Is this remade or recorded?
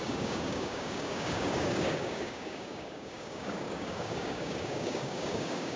remade